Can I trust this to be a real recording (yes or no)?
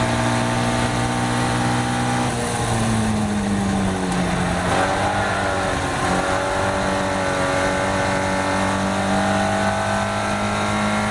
yes